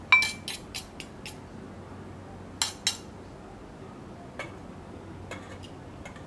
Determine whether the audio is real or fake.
real